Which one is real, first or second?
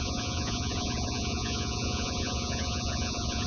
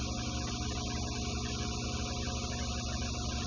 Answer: second